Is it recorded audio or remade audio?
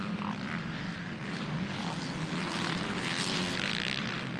recorded